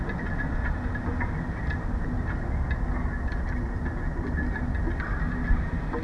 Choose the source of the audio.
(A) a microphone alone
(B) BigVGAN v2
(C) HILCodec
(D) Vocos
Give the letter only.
A